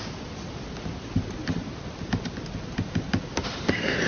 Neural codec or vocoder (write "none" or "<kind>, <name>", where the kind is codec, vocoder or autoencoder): none